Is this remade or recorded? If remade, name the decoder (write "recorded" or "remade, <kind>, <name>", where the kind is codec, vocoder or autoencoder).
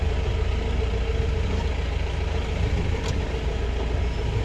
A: recorded